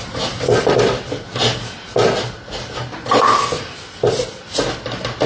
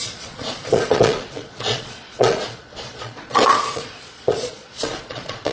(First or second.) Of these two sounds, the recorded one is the first